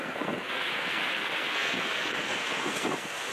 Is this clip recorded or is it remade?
remade